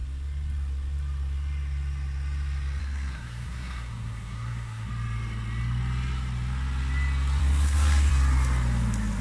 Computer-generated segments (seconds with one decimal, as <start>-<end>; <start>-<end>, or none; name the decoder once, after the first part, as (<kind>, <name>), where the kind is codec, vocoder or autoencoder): 2.8-4.9 (codec, SNAC); 7.4-8.1